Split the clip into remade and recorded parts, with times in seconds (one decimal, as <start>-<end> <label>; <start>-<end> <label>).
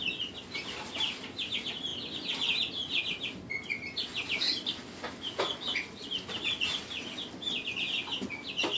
0.0-8.8 recorded